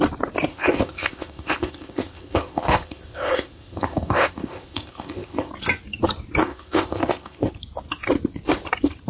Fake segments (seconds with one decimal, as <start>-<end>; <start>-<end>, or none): 0.5-5.5; 6.4-7.5